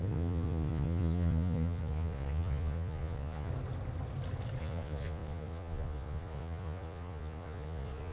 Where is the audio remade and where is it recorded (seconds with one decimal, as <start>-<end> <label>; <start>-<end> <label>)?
0.0-3.5 remade; 3.5-4.6 recorded; 4.6-8.1 remade